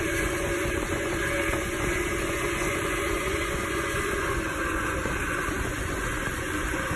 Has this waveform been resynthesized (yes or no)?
yes